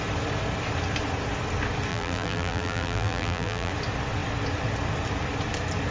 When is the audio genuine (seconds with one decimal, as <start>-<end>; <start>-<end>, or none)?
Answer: 0.0-1.9; 3.7-5.9